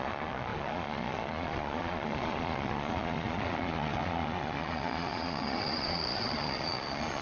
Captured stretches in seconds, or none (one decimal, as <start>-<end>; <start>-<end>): none